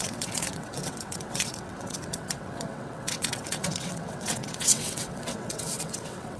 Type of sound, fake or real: fake